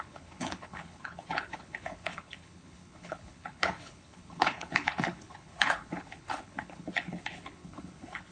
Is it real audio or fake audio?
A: fake